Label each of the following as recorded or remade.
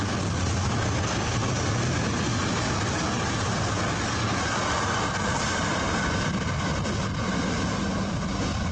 recorded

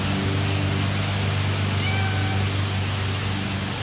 recorded